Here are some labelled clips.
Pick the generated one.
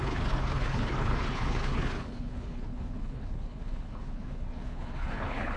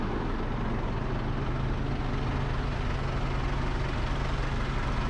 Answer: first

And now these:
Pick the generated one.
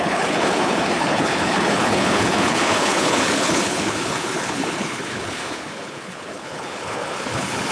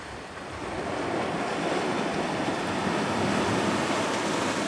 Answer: first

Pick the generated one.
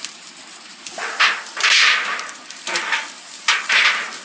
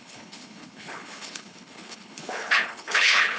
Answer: second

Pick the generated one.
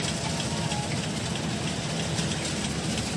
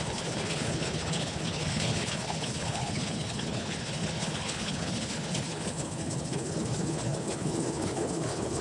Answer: second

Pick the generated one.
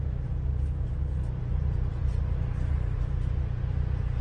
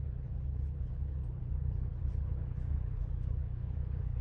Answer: second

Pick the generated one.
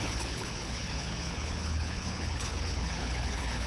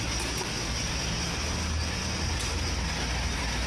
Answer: first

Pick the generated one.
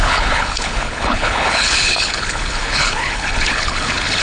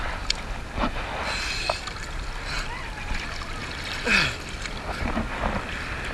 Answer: first